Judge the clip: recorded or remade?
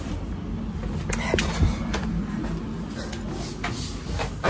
recorded